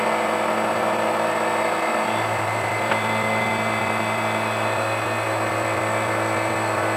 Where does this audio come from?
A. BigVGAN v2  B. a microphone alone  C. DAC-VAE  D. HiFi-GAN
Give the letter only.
B